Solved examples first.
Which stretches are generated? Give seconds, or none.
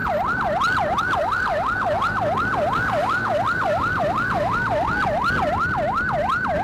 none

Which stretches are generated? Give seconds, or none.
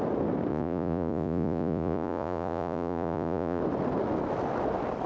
0.5-3.6 (vocoder, Vocos)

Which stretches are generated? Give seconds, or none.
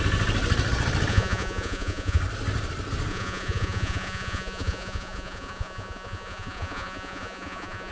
1.1-2.2 (vocoder, Vocos); 3.1-7.9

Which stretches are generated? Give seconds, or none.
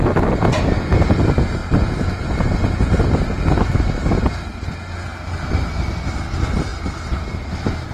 6.7-7.5 (vocoder, BigVGAN v2)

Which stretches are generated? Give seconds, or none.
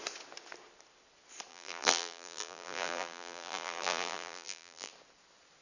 1.5-4.9 (vocoder, BigVGAN v2)